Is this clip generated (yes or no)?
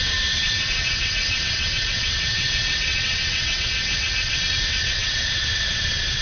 yes